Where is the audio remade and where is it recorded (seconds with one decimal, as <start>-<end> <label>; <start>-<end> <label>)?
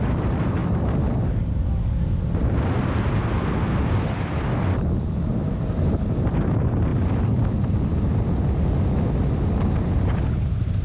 0.0-10.8 recorded